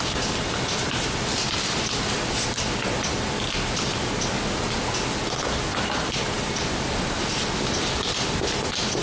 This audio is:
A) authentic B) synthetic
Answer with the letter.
A